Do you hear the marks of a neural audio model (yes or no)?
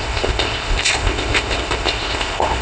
yes